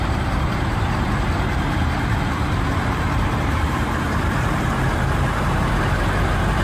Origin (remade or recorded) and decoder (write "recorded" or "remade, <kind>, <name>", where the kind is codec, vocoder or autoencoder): remade, vocoder, BigVGAN v2